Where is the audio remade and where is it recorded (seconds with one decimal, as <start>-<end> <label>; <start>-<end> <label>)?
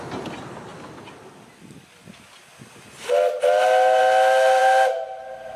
0.0-5.6 recorded